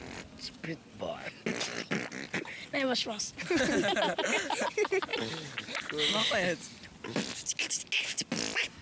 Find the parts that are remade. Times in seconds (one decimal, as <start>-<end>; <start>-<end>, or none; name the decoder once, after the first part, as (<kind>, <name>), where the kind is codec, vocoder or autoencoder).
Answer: none